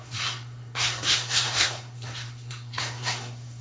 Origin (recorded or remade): remade